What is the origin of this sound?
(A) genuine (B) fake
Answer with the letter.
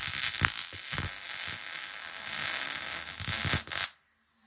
A